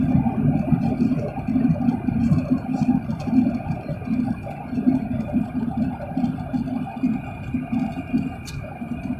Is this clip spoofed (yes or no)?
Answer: no